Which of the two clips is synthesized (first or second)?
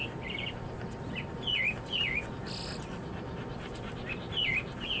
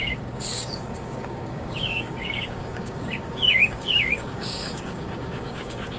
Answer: second